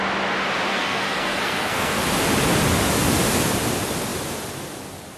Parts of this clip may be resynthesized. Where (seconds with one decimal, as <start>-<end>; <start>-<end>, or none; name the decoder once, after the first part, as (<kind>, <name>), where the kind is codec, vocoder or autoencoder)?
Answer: 0.7-2.0 (codec, SNAC)